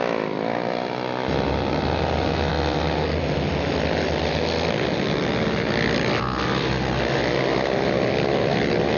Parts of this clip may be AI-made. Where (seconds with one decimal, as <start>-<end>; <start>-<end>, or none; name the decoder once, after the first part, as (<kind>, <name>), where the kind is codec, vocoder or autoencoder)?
none